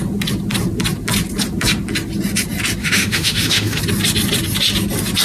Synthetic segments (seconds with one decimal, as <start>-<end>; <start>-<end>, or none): 2.8-3.8

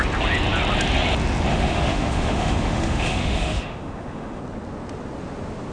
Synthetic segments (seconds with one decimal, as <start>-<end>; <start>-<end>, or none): 1.5-4.4

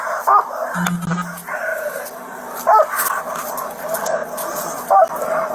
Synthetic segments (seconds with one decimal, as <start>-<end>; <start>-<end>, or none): none

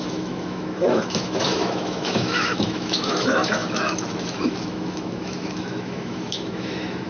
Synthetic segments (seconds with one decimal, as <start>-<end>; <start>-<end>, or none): 0.0-7.1

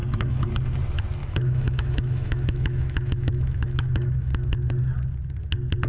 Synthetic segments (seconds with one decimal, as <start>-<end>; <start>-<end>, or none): 0.0-0.5; 1.2-4.7

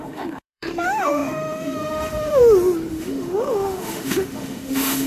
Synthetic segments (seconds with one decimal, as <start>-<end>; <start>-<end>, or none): 0.0-2.4; 2.9-5.1

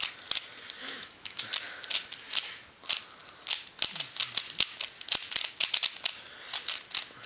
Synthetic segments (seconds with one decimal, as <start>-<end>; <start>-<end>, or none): 0.8-1.4

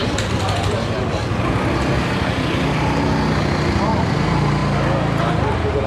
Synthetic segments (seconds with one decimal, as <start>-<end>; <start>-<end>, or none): none